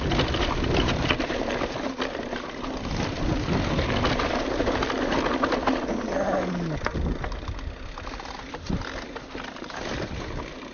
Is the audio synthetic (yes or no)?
no